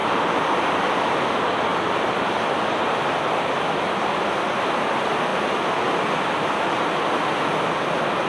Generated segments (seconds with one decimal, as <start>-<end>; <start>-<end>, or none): 0.0-1.0; 1.7-2.7